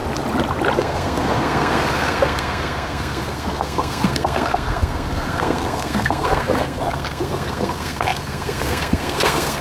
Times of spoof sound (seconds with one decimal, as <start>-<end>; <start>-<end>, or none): 0.8-9.6